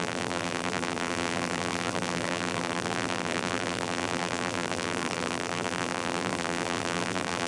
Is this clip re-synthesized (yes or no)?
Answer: yes